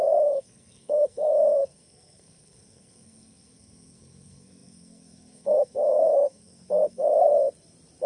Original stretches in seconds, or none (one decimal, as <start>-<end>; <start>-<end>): 7.3-8.1